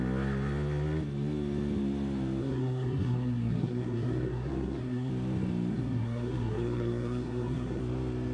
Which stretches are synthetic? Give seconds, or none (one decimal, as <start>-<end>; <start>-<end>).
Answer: 2.4-5.1; 5.7-7.8